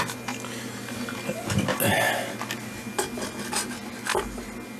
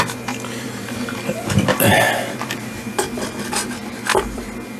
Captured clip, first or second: first